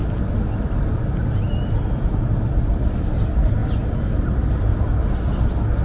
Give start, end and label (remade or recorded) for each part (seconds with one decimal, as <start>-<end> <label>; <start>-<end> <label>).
0.0-5.8 recorded